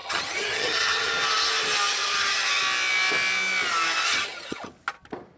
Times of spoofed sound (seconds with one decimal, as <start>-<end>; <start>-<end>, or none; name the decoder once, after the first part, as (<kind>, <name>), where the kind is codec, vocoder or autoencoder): 0.0-1.1 (vocoder, HiFi-GAN); 1.9-2.6; 4.1-4.7